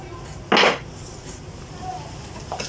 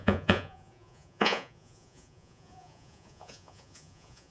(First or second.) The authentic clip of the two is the first